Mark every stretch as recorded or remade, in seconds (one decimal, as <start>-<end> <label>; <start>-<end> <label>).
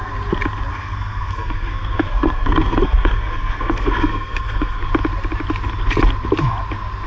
0.0-0.7 recorded; 0.7-4.9 remade; 4.9-7.1 recorded